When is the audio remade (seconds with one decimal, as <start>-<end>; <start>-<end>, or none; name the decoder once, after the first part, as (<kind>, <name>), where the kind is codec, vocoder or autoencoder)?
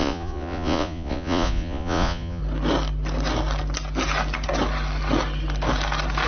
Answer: 0.0-2.4 (vocoder, Vocos)